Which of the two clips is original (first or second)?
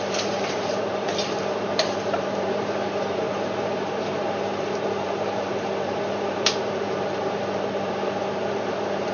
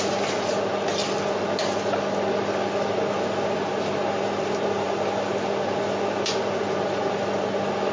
second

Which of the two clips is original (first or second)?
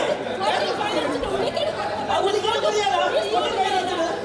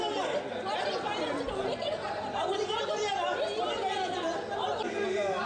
second